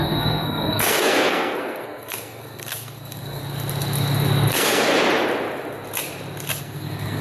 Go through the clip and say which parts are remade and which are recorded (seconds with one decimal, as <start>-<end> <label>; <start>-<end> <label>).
0.0-3.4 remade; 3.4-4.5 recorded; 4.5-4.9 remade; 4.9-6.6 recorded; 6.6-7.2 remade